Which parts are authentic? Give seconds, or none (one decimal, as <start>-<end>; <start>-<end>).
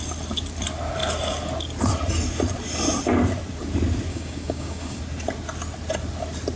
0.0-4.1; 5.0-6.6